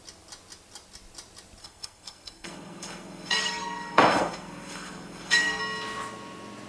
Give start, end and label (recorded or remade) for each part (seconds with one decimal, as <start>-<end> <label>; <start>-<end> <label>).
0.0-1.6 recorded; 1.6-5.6 remade; 5.6-6.7 recorded